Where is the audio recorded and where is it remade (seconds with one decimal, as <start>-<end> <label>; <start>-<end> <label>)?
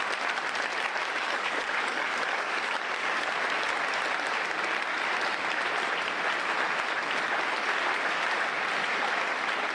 0.0-1.0 recorded; 1.0-3.3 remade; 3.3-9.7 recorded